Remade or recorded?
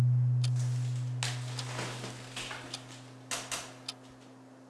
recorded